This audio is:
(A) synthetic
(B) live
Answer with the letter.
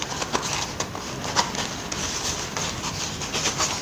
B